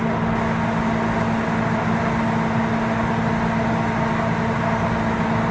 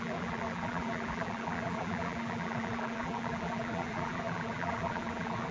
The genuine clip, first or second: first